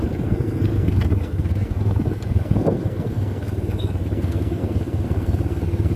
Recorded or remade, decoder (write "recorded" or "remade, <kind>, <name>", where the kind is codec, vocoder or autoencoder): remade, codec, SNAC